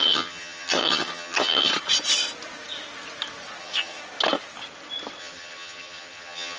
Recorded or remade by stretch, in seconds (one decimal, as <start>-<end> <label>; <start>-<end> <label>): 0.0-1.7 remade; 1.7-3.6 recorded; 3.6-4.0 remade; 4.0-5.2 recorded; 5.2-6.6 remade